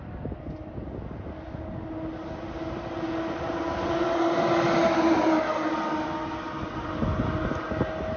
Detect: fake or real real